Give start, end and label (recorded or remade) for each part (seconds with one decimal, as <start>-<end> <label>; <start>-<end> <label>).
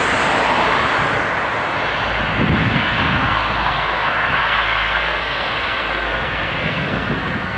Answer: 0.0-2.6 recorded; 2.6-7.6 remade